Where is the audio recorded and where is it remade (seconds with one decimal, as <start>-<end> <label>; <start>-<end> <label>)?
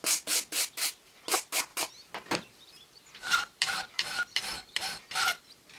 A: 0.0-1.7 recorded; 1.7-5.0 remade; 5.0-5.8 recorded